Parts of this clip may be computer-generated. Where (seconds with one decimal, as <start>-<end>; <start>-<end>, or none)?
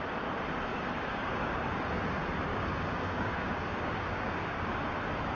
0.7-1.8; 2.5-4.7